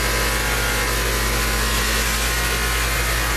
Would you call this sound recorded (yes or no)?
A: yes